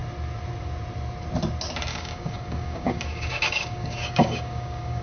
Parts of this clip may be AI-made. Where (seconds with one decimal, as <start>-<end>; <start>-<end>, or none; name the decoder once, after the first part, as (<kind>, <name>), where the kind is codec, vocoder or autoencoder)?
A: 1.9-5.0 (codec, DAC)

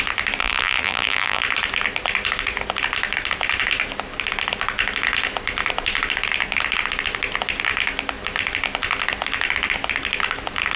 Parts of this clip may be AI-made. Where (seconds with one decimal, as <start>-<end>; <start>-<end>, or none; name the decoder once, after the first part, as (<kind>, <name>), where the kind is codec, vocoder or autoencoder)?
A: 0.4-1.4 (vocoder, BigVGAN v2)